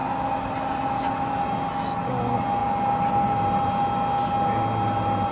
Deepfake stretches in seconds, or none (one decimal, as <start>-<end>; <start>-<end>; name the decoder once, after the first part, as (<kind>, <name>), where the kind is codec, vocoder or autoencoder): none